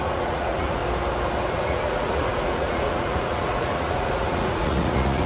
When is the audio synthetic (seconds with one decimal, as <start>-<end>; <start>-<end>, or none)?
0.0-0.8; 1.5-5.3